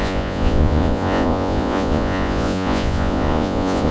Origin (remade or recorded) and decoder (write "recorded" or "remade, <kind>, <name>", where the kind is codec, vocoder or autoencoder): remade, vocoder, Vocos